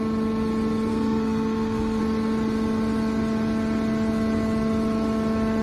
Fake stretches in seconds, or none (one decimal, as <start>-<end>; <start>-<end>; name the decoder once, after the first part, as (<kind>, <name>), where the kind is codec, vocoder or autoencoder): 0.9-2.0 (codec, SNAC)